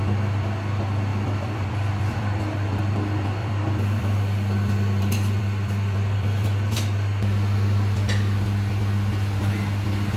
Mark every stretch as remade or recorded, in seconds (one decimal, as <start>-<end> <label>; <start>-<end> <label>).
0.0-1.1 recorded; 1.1-2.8 remade; 2.8-3.4 recorded; 3.4-5.4 remade; 5.4-10.2 recorded